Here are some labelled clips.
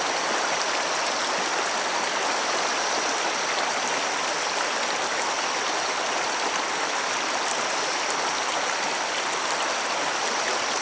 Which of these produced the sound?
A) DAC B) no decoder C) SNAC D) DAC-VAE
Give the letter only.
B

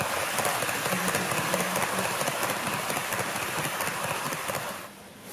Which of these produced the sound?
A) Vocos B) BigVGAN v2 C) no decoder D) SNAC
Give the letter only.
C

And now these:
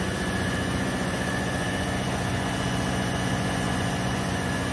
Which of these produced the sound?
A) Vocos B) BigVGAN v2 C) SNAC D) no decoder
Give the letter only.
A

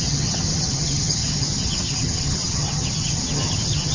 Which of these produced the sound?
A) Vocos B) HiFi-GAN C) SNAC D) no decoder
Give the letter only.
B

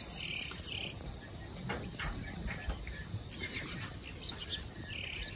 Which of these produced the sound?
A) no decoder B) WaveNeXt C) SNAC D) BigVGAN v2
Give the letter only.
A